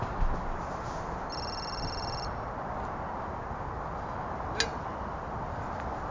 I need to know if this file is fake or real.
real